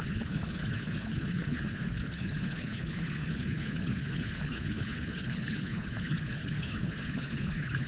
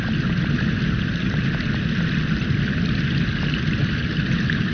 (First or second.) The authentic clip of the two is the second